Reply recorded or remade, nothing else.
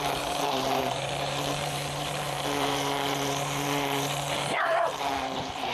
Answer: remade